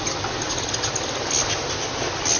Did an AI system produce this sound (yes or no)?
no